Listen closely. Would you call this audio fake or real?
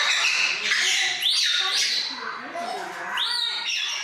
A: fake